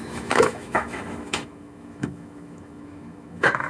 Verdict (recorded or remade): remade